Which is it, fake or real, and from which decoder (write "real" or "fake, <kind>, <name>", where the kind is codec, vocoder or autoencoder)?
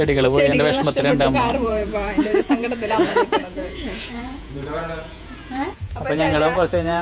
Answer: fake, vocoder, Vocos